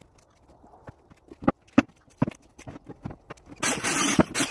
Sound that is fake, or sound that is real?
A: real